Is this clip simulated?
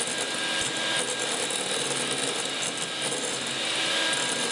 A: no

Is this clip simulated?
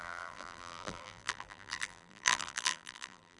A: yes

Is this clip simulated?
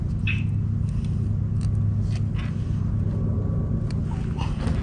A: no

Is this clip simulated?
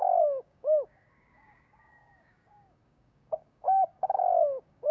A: yes